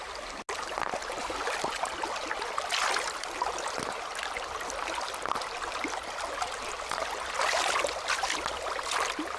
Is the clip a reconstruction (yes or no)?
no